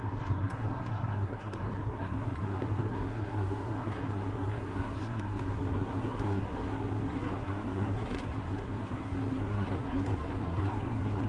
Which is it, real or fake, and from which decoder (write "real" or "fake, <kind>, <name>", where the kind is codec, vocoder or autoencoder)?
fake, codec, SNAC